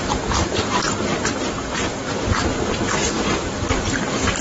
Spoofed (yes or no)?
yes